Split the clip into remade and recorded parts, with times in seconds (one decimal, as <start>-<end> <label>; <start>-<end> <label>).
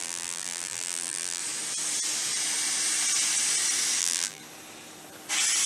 0.0-1.4 remade; 1.4-4.0 recorded; 4.0-4.4 remade; 4.4-5.7 recorded